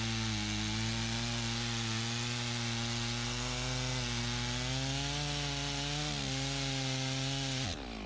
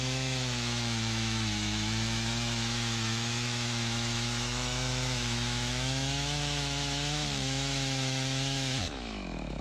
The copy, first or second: second